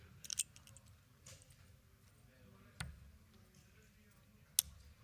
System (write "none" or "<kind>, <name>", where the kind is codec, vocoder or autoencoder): none